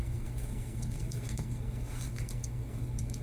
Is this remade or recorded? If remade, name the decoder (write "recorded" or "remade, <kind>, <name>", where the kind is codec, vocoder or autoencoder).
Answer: remade, codec, SNAC